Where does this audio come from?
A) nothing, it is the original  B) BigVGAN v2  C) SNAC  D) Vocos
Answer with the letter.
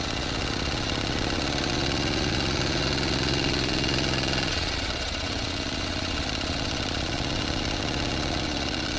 D